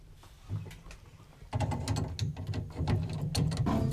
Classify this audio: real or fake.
real